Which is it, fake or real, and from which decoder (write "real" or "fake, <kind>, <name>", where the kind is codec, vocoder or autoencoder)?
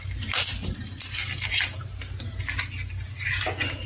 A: real